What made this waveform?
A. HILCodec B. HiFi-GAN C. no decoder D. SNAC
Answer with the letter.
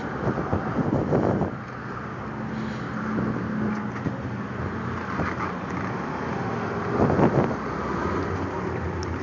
C